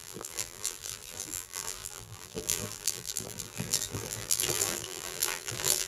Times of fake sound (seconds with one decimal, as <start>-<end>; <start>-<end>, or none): 0.0-5.9